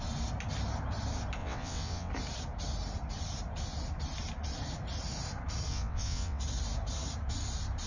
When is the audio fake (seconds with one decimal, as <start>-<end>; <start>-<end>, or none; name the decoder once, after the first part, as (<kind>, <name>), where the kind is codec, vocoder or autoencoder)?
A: 1.4-2.1 (vocoder, WaveNeXt); 5.7-6.4